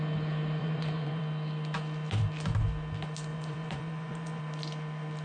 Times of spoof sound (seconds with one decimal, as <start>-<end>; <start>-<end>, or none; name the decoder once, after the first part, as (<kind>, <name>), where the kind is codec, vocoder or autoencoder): 0.6-1.2 (vocoder, Vocos); 3.3-4.4